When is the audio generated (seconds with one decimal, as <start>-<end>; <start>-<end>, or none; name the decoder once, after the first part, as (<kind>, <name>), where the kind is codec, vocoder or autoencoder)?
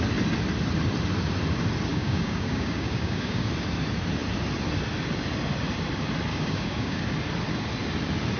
1.9-3.5 (codec, DAC); 6.3-7.0